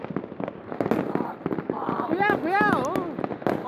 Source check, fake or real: real